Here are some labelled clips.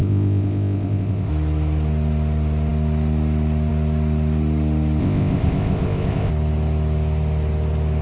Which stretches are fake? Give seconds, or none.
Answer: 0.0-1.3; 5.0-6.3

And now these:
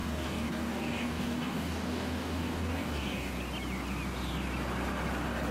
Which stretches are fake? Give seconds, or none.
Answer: 0.0-3.3

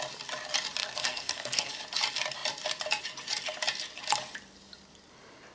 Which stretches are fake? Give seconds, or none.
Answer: 0.8-1.7

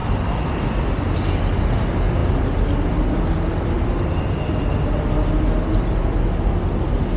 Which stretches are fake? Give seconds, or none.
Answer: none

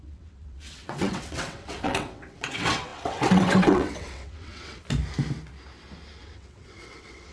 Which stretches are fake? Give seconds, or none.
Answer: 0.0-4.8; 6.2-7.3

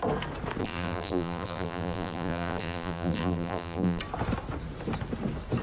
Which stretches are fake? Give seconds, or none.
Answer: 0.6-4.0

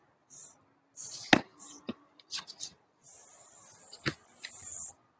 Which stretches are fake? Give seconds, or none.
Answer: 1.5-2.8